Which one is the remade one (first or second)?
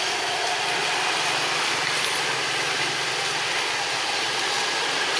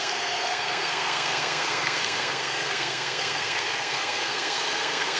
second